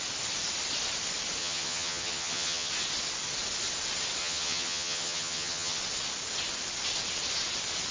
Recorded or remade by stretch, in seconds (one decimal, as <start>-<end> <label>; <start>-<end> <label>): 0.0-1.4 recorded; 1.4-2.7 remade; 2.7-4.2 recorded; 4.2-5.8 remade; 5.8-7.9 recorded